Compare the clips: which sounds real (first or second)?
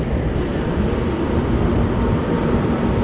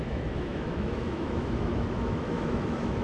first